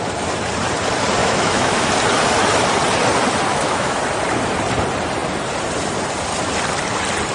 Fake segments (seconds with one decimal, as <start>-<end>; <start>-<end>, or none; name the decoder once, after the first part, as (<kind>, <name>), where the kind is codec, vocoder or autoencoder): 1.2-1.8 (autoencoder, DAC-VAE); 3.5-4.0